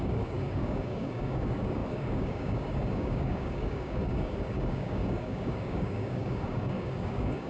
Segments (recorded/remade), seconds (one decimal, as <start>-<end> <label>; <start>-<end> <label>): 0.0-7.5 remade